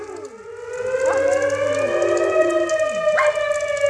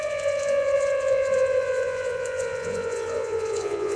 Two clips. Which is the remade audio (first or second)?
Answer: second